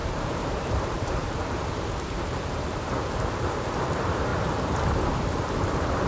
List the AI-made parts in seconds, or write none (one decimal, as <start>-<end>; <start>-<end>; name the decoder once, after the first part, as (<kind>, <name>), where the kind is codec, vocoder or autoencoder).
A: 0.0-3.7 (vocoder, BigVGAN v2)

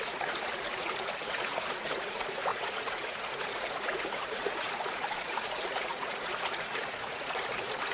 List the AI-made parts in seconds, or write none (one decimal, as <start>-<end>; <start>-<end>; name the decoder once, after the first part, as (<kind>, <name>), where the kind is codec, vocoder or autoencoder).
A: 0.0-7.9 (vocoder, Vocos)

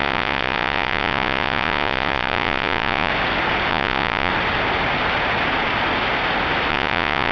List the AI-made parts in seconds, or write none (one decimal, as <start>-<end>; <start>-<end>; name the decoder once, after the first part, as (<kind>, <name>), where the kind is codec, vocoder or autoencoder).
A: 0.0-3.1 (vocoder, Vocos); 3.7-4.3; 6.7-7.3

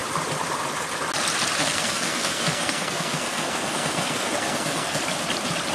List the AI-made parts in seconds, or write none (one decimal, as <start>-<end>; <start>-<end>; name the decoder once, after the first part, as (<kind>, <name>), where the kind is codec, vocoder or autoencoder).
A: 1.6-5.0 (codec, SNAC)

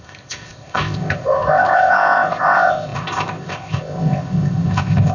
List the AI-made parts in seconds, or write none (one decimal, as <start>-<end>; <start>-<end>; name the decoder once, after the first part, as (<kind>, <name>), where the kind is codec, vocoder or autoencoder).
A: 0.0-5.1 (codec, ZipCodec)

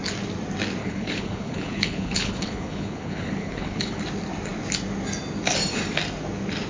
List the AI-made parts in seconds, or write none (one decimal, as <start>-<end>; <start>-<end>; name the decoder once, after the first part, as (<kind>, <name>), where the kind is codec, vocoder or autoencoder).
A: 0.8-4.0 (codec, HILCodec)